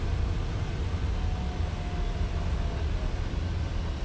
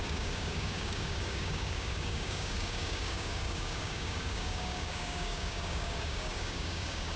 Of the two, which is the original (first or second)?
first